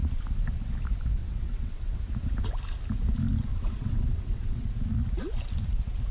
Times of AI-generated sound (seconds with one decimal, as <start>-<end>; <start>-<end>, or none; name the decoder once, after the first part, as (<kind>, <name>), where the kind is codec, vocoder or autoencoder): 1.2-2.0 (vocoder, WaveNeXt); 3.5-4.7